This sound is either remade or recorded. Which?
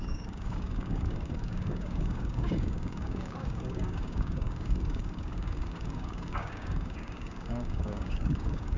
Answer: remade